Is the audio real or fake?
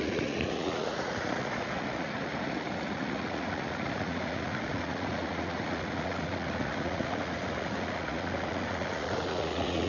fake